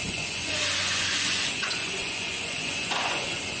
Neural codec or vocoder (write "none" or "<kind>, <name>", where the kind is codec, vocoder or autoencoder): vocoder, Vocos